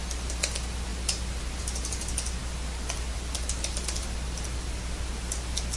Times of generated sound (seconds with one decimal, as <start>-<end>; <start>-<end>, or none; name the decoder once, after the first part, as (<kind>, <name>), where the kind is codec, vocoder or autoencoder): none